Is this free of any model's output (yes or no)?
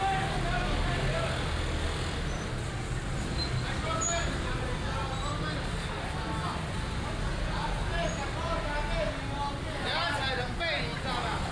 yes